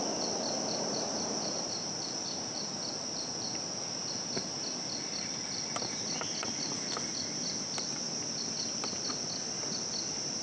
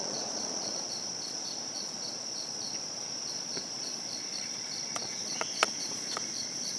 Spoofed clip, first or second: second